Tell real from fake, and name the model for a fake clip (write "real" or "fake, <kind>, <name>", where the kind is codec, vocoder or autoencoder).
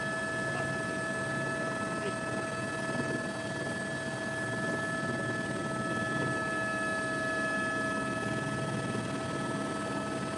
real